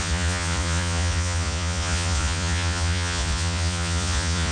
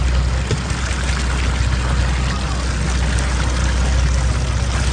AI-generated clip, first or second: first